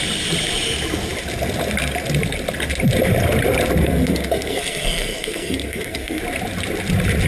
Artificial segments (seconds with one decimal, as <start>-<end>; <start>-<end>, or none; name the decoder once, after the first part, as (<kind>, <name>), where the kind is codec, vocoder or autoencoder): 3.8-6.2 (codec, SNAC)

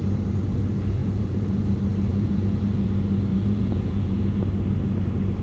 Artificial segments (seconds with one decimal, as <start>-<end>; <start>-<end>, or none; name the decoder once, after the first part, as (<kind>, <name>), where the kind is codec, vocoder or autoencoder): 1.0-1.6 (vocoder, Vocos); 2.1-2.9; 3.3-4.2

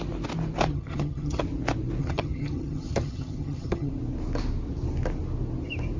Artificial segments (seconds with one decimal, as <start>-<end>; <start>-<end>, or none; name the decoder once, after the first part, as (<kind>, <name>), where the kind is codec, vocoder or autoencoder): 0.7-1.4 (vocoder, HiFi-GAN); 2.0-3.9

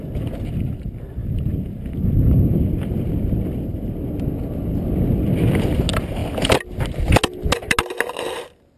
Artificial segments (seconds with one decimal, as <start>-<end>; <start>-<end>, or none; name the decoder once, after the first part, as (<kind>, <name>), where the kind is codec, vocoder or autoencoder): 1.2-5.0 (vocoder, BigVGAN v2)

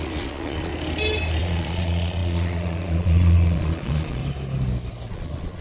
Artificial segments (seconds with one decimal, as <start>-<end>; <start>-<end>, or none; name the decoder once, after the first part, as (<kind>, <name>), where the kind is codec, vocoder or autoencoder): 0.0-0.7 (vocoder, Vocos); 1.4-4.2; 5.1-5.6

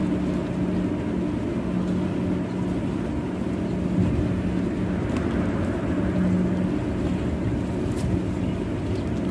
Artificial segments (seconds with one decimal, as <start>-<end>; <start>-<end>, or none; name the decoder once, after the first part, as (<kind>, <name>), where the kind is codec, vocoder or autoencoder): none